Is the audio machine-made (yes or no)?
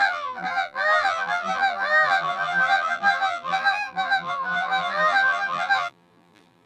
yes